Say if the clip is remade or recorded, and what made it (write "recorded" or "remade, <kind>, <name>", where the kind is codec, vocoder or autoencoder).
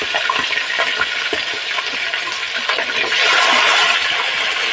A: recorded